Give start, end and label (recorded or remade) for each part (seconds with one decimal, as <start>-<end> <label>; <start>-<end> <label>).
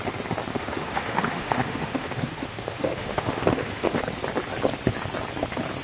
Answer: 0.0-0.5 recorded; 0.5-4.0 remade; 4.0-5.8 recorded